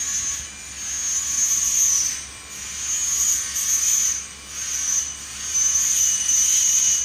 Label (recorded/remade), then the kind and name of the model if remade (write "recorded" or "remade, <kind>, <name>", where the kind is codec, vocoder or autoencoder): recorded